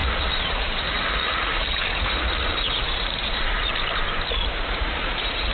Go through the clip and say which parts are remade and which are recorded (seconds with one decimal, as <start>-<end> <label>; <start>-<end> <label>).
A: 0.0-3.7 remade; 3.7-4.3 recorded; 4.3-5.5 remade